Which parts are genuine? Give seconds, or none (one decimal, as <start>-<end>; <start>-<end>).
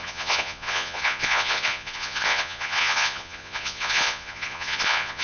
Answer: none